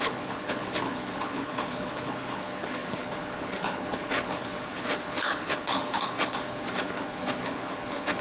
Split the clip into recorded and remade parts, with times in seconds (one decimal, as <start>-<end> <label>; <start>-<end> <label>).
0.0-8.2 remade